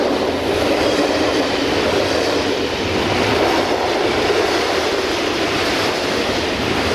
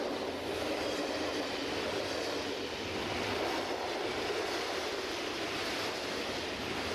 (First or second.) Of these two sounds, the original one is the second